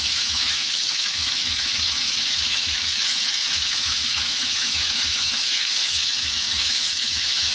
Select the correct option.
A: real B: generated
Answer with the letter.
B